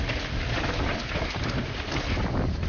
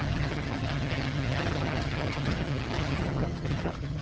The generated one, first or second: second